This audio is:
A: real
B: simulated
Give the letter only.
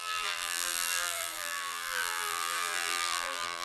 B